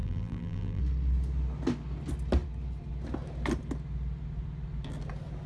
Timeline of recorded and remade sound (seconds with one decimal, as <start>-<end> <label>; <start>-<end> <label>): 0.0-0.8 remade; 0.8-5.5 recorded